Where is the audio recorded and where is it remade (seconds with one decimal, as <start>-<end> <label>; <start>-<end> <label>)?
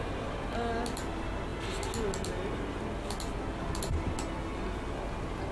0.0-5.5 recorded